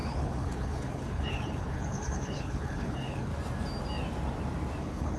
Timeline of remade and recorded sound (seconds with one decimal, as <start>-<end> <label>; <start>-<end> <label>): 0.0-3.3 remade; 3.3-4.8 recorded; 4.8-5.2 remade